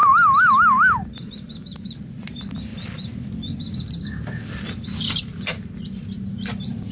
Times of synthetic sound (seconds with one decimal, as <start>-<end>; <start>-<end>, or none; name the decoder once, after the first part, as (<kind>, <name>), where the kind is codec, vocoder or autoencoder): none